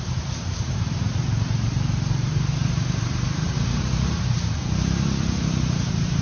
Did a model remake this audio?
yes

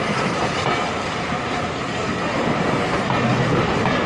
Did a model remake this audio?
no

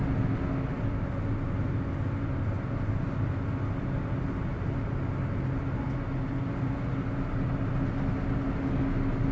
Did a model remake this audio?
no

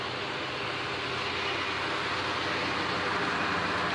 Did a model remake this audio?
no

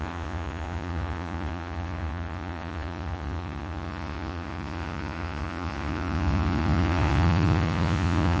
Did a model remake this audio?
yes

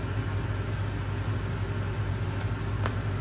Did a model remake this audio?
no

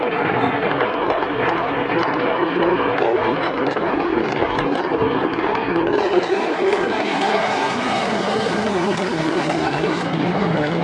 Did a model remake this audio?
yes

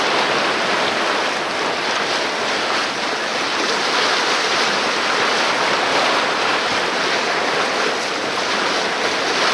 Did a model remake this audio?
no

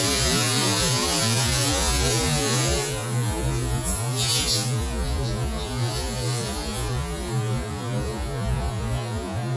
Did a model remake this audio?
yes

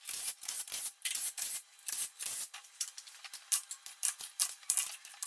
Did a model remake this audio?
no